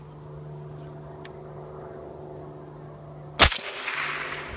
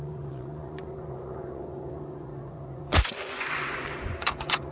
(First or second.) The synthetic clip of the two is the second